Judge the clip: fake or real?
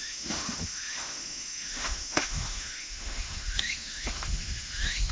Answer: fake